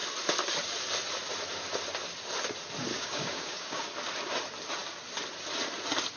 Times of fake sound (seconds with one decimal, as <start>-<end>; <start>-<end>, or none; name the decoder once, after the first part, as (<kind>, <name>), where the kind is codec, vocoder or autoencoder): 2.9-3.8 (codec, DAC)